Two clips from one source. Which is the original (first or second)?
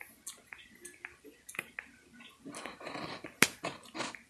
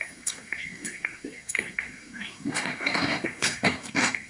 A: first